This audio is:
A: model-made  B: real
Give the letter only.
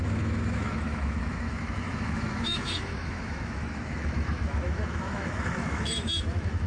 A